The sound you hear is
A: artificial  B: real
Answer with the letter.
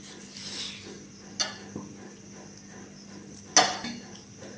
B